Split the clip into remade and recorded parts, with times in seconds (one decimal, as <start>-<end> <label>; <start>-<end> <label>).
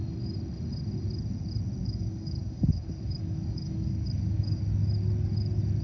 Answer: 0.0-1.8 recorded; 1.8-4.6 remade; 4.6-5.8 recorded